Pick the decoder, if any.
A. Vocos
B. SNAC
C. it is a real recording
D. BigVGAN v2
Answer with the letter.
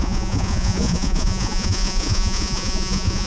A